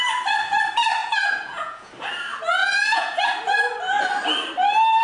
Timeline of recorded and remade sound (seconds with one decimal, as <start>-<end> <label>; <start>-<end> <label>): 0.0-1.0 recorded; 1.0-1.9 remade; 1.9-2.6 recorded; 2.6-3.2 remade; 3.2-5.0 recorded

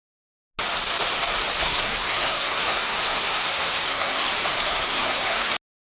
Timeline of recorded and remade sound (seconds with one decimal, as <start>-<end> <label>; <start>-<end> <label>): 0.0-1.6 recorded; 1.6-4.3 remade; 4.3-4.7 recorded; 4.7-5.5 remade; 5.5-5.9 recorded

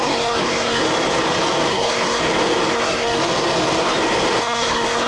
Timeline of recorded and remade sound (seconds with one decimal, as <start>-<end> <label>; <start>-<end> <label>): 0.0-0.8 remade; 0.8-1.7 recorded; 1.7-2.2 remade; 2.2-2.7 recorded; 2.7-3.2 remade; 3.2-4.4 recorded; 4.4-5.1 remade

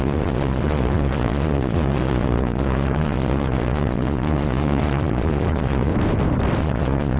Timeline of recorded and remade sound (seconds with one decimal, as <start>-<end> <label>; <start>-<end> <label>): 0.0-5.9 remade; 5.9-6.6 recorded; 6.6-7.2 remade

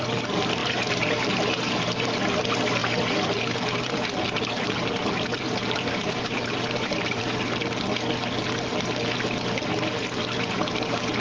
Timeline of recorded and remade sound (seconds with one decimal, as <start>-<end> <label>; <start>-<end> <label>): 0.0-0.6 recorded; 0.6-1.6 remade; 1.6-2.8 recorded; 2.8-7.2 remade; 7.2-11.2 recorded

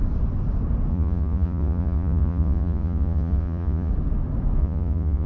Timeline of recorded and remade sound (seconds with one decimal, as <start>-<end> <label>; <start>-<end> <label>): 0.0-0.9 recorded; 0.9-3.9 remade; 3.9-4.6 recorded; 4.6-5.3 remade